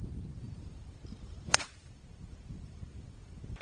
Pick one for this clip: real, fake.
fake